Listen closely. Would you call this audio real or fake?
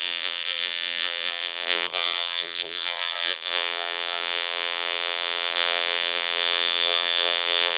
fake